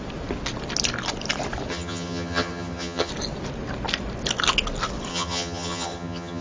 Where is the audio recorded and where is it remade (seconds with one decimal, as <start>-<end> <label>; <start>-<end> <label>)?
0.0-1.7 recorded; 1.7-3.1 remade; 3.1-5.1 recorded; 5.1-6.4 remade